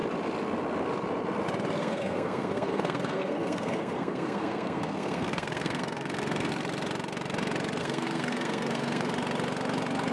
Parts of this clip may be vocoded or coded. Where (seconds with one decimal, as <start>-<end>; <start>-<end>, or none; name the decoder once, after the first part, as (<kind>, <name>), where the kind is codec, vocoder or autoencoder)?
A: 1.8-6.5 (codec, SNAC); 7.8-9.1